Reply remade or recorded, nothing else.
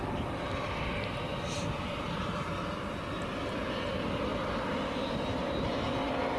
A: recorded